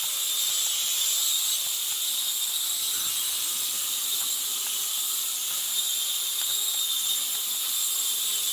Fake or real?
real